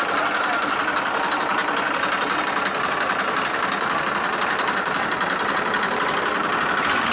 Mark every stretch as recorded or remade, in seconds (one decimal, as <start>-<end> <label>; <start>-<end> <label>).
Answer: 0.0-7.1 recorded